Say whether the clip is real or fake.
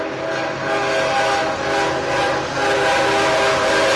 real